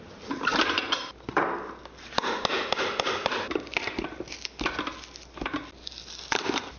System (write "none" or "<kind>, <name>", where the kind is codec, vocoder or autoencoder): none